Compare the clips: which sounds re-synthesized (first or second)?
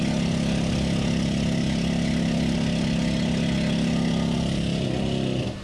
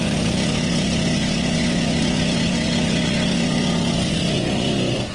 second